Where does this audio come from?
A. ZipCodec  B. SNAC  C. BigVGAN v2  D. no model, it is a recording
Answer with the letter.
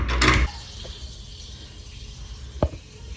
D